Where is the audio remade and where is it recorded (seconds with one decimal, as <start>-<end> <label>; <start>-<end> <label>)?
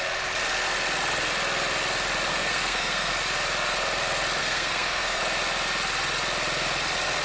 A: 0.0-2.3 recorded; 2.3-3.1 remade; 3.1-4.4 recorded; 4.4-5.2 remade; 5.2-7.2 recorded